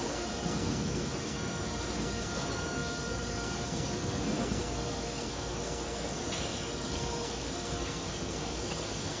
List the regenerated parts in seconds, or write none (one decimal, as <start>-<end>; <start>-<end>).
0.0-9.2